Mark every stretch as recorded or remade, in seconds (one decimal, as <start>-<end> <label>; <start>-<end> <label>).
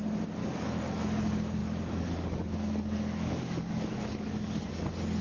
0.0-0.4 recorded; 0.4-1.0 remade; 1.0-1.6 recorded; 1.6-4.7 remade; 4.7-5.2 recorded